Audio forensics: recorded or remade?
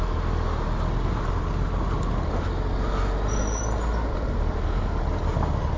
recorded